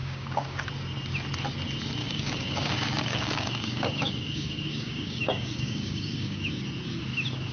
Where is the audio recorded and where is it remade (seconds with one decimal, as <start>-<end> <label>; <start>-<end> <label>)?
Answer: 0.0-0.7 remade; 0.7-2.0 recorded; 2.0-6.5 remade; 6.5-7.5 recorded

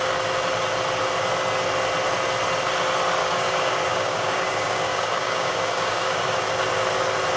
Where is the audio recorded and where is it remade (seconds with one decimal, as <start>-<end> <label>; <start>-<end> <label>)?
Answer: 0.0-3.2 recorded; 3.2-6.5 remade; 6.5-7.4 recorded

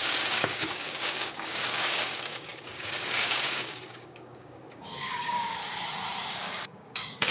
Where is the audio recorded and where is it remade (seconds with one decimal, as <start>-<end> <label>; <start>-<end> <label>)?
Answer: 0.0-5.6 remade; 5.6-6.3 recorded; 6.3-7.3 remade

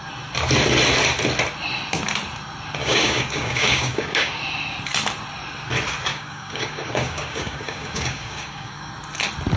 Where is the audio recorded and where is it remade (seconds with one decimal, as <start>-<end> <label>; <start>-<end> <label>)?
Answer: 0.0-2.8 recorded; 2.8-4.4 remade; 4.4-6.1 recorded; 6.1-8.9 remade; 8.9-9.6 recorded

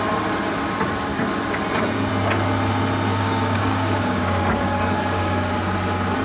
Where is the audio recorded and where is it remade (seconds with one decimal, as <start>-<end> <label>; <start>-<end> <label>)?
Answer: 0.0-3.1 recorded; 3.1-5.5 remade; 5.5-6.2 recorded

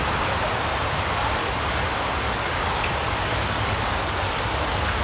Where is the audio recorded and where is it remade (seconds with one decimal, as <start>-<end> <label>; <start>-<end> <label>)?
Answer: 0.0-1.4 recorded; 1.4-4.4 remade; 4.4-5.0 recorded

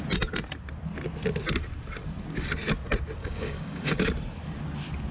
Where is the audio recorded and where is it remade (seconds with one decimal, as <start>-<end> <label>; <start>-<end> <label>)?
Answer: 0.0-3.2 recorded; 3.2-4.1 remade; 4.1-5.1 recorded

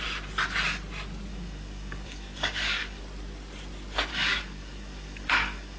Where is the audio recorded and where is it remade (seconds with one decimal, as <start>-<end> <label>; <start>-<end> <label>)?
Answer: 0.0-1.3 recorded; 1.3-3.0 remade; 3.0-4.1 recorded; 4.1-5.8 remade